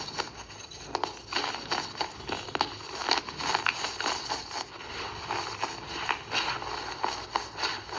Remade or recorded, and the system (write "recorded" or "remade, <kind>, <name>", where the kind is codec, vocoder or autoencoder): recorded